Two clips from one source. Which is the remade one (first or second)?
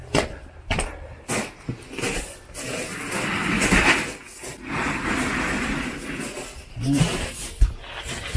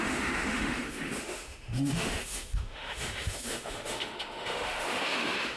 second